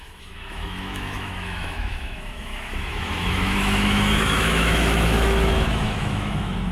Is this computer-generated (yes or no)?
yes